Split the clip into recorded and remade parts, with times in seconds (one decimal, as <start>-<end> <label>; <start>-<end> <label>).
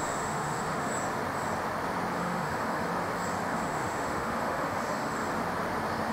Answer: 0.0-0.9 remade; 0.9-2.2 recorded; 2.2-2.9 remade; 2.9-3.5 recorded; 3.5-5.2 remade; 5.2-6.1 recorded